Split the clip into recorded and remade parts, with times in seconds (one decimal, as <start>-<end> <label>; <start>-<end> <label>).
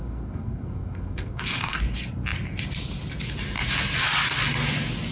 0.0-1.8 remade; 1.8-5.1 recorded